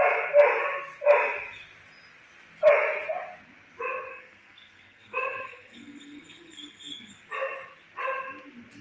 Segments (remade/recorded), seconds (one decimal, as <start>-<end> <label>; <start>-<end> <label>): 0.0-4.1 recorded; 4.1-7.1 remade; 7.1-8.8 recorded